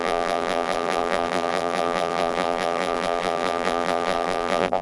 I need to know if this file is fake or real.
fake